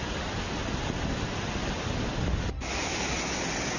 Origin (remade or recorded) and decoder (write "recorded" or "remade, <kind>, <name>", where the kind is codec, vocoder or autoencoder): recorded